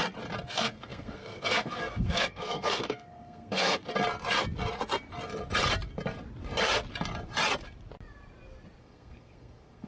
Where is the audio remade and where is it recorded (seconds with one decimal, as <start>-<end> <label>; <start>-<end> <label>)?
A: 0.0-0.5 recorded; 0.5-3.9 remade; 3.9-8.8 recorded; 8.8-9.9 remade